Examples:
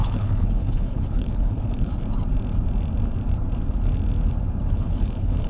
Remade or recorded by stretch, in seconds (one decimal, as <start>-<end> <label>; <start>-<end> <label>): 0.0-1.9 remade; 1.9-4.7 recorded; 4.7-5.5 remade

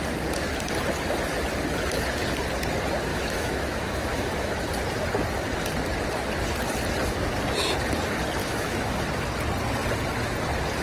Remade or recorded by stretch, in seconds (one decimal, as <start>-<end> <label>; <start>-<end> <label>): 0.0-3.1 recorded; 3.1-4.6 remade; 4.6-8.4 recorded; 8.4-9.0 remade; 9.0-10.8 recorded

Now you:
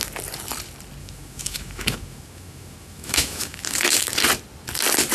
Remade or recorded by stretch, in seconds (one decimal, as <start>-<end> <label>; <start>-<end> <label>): 0.0-1.0 recorded; 1.0-4.1 remade; 4.1-5.1 recorded

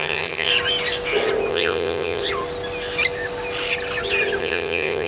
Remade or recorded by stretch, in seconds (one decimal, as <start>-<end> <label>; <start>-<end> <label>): 0.0-0.5 remade; 0.5-1.5 recorded; 1.5-2.2 remade; 2.2-4.4 recorded; 4.4-5.1 remade